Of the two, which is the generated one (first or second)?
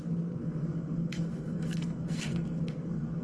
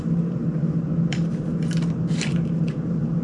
first